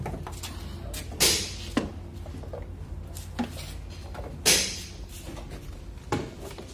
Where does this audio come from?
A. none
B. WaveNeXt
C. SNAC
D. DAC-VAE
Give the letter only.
A